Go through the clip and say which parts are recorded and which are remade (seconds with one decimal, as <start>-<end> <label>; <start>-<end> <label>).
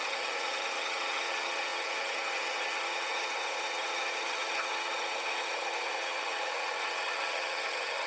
0.0-8.1 remade